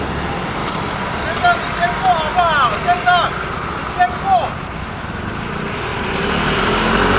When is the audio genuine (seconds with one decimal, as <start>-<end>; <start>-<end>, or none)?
0.0-7.2